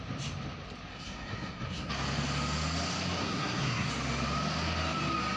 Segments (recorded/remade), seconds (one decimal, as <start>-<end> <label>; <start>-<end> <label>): 0.0-0.9 recorded; 0.9-1.9 remade; 1.9-3.2 recorded; 3.2-3.9 remade; 3.9-5.4 recorded